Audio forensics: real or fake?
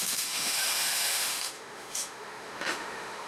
fake